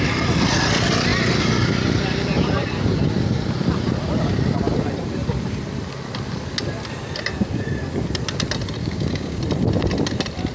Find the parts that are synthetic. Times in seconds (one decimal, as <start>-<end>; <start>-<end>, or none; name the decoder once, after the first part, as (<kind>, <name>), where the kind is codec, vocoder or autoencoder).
8.8-9.4 (codec, DAC)